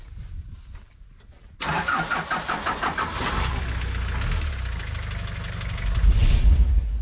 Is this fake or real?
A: real